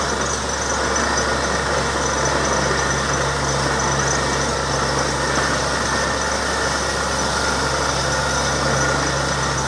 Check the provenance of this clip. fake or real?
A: real